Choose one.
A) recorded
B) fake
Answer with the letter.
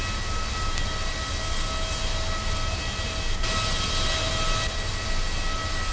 A